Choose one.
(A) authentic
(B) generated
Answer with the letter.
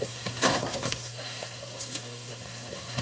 B